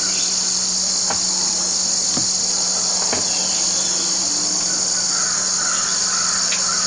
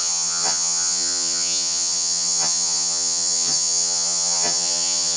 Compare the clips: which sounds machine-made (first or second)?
second